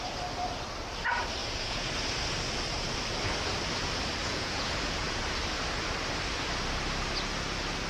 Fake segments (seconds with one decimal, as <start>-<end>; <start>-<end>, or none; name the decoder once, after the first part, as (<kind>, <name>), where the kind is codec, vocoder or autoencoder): 1.4-1.9 (vocoder, Vocos); 4.2-5.2